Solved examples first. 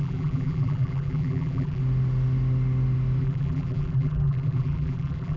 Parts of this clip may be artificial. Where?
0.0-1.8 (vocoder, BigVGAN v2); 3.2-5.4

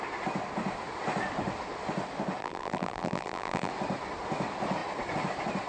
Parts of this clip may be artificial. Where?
2.4-3.7 (vocoder, BigVGAN v2)